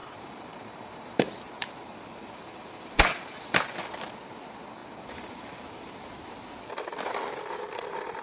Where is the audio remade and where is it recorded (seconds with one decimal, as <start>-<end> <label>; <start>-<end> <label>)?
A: 0.0-3.6 remade; 3.6-4.8 recorded; 4.8-6.0 remade; 6.0-8.2 recorded

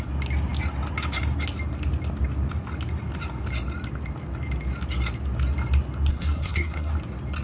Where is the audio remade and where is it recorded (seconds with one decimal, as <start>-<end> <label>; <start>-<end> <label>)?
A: 0.0-6.1 recorded; 6.1-6.9 remade; 6.9-7.4 recorded

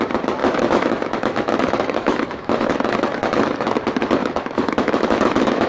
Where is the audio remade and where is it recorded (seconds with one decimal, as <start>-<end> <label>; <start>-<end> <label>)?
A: 0.0-0.4 recorded; 0.4-3.8 remade; 3.8-4.2 recorded; 4.2-5.7 remade

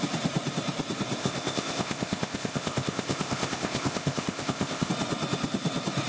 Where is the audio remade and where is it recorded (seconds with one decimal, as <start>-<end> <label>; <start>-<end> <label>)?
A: 0.0-1.2 recorded; 1.2-4.9 remade; 4.9-6.1 recorded